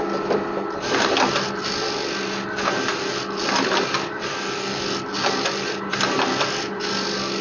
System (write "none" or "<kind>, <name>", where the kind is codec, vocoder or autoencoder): none